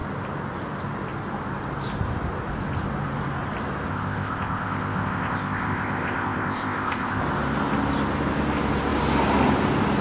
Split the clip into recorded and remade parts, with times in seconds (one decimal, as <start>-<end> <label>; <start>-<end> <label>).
0.0-3.9 recorded; 3.9-7.2 remade; 7.2-10.0 recorded